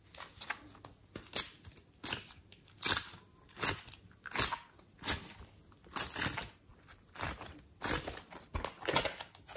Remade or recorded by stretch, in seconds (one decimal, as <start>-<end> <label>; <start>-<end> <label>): 0.0-6.7 recorded; 6.7-8.6 remade; 8.6-9.6 recorded